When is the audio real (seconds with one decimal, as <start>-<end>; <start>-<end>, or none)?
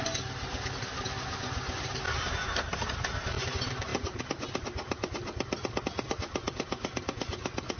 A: 0.0-7.8